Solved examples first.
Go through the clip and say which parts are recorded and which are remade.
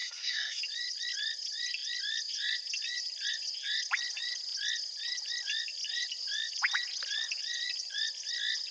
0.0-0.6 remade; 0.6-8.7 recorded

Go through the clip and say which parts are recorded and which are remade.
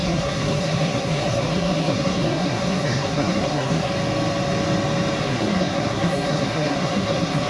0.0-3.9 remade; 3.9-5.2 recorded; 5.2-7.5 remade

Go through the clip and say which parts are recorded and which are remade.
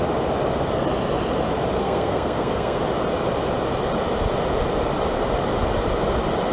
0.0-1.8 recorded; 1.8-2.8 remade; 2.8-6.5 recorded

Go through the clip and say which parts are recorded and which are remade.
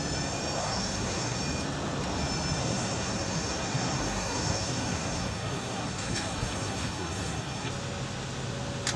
0.0-0.6 recorded; 0.6-1.4 remade; 1.4-2.6 recorded; 2.6-7.7 remade; 7.7-9.0 recorded